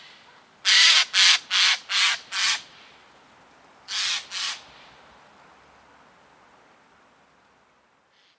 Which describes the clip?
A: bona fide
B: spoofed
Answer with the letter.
A